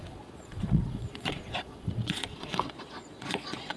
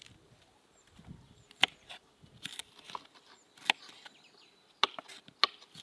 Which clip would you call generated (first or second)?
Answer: first